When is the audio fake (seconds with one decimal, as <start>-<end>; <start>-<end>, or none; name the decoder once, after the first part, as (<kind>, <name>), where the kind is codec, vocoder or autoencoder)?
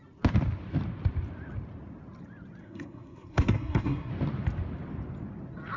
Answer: 2.6-4.1 (codec, SNAC)